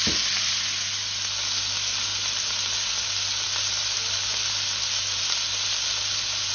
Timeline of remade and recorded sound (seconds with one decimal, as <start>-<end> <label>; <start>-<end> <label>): 0.0-6.5 recorded